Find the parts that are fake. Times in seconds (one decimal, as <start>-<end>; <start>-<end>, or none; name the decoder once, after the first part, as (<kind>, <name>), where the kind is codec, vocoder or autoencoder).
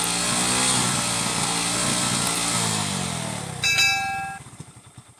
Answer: none